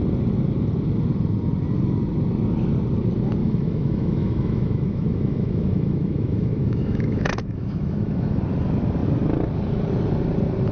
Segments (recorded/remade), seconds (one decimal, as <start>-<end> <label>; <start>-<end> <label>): 0.0-3.4 recorded; 3.4-8.4 remade; 8.4-10.7 recorded

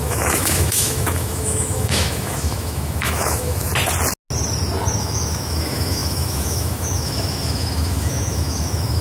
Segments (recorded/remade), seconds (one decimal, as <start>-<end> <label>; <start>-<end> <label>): 0.0-3.7 remade; 3.7-5.0 recorded; 5.0-9.0 remade

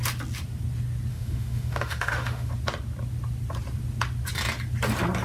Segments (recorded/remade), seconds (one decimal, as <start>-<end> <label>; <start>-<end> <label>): 0.0-1.1 recorded; 1.1-2.5 remade; 2.5-5.2 recorded

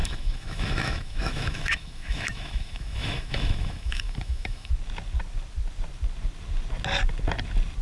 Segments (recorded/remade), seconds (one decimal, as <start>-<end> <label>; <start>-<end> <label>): 0.0-4.7 remade; 4.7-7.8 recorded

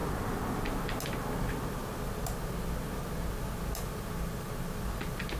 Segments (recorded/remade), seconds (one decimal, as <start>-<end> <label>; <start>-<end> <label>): 0.0-5.4 recorded